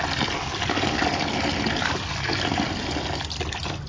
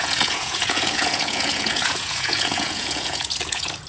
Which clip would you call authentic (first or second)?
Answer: first